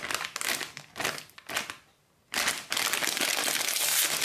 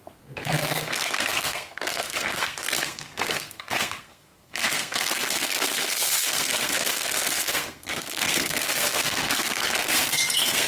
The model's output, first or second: second